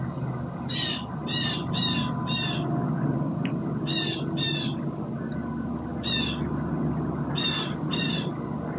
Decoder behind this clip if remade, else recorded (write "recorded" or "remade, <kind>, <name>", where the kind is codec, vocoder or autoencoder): recorded